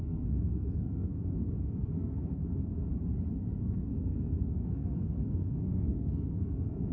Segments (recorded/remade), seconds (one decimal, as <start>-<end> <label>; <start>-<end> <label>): 0.0-2.4 remade; 2.4-3.3 recorded; 3.3-6.9 remade